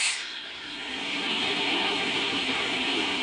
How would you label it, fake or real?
fake